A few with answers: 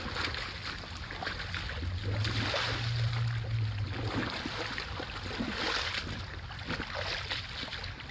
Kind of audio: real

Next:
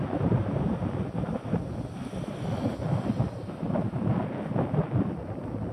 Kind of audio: real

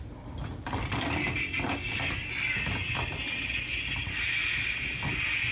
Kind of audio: real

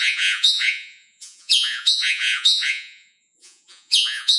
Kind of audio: fake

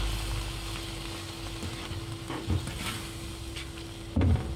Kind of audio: real